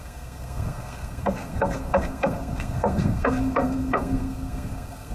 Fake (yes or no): yes